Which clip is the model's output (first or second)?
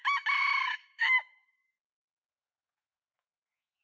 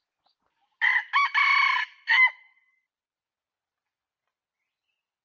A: first